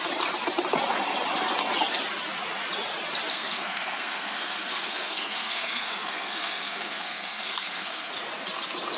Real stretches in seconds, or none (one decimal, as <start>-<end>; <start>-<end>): 0.0-3.3; 8.1-9.0